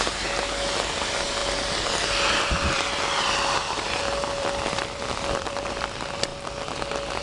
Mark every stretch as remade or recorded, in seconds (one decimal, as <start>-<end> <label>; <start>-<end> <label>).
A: 0.0-1.4 recorded; 1.4-5.7 remade; 5.7-7.2 recorded